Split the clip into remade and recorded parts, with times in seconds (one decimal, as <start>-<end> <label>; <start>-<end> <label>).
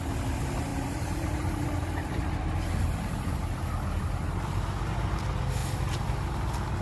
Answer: 0.0-6.8 recorded